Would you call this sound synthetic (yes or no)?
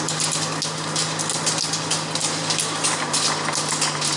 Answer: no